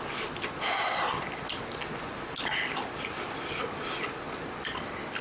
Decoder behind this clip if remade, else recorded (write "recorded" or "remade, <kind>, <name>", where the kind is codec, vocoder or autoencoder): recorded